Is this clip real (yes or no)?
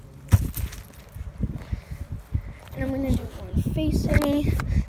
yes